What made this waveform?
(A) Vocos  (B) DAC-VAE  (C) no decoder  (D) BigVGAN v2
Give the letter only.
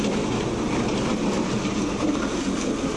C